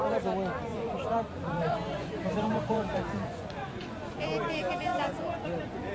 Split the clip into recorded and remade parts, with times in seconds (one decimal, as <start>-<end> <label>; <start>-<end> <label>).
0.0-0.7 recorded; 0.7-4.2 remade; 4.2-4.9 recorded; 4.9-5.9 remade